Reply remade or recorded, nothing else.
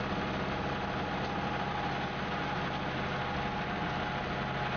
recorded